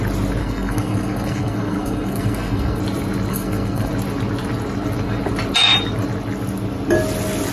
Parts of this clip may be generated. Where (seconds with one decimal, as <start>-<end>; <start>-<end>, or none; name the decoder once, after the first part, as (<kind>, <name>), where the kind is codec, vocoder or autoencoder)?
0.4-2.8 (codec, SNAC); 3.3-3.9